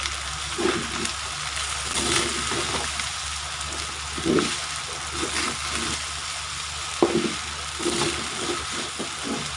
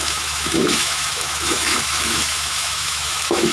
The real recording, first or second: first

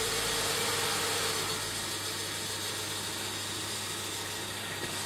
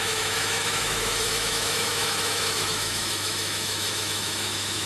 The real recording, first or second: first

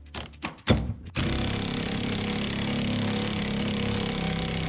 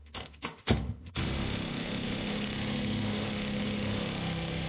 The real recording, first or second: first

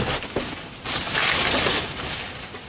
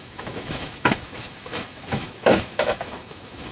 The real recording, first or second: first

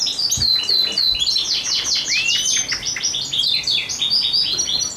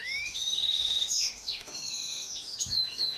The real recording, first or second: first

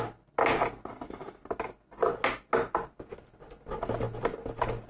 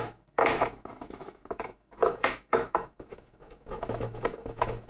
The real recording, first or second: first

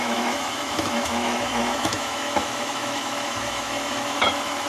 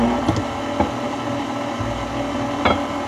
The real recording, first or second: second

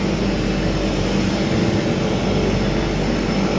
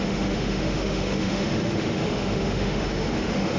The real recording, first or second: first